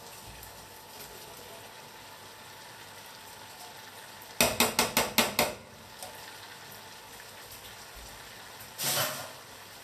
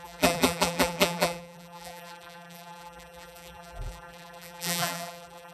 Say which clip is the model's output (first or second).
second